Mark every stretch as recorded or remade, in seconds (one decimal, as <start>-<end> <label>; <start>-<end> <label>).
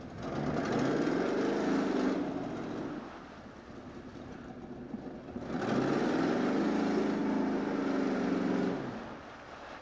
0.0-4.1 recorded; 4.1-4.6 remade; 4.6-9.8 recorded